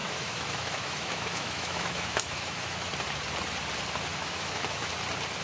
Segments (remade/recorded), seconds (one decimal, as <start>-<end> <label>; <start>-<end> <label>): 0.0-2.9 remade; 2.9-4.1 recorded; 4.1-4.9 remade; 4.9-5.4 recorded